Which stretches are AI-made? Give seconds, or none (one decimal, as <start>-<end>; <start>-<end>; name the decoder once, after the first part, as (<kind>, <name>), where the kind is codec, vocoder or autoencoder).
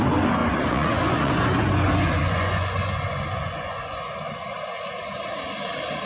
0.4-4.1 (vocoder, Vocos)